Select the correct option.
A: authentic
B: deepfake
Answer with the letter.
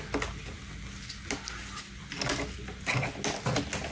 A